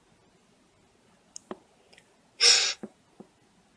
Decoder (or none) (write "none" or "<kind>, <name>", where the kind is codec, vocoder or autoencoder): none